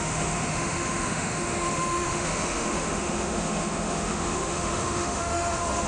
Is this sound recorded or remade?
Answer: remade